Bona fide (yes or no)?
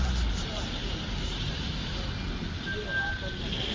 yes